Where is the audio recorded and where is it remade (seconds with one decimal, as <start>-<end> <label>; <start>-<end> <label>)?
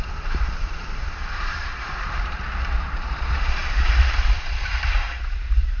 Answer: 0.0-5.8 remade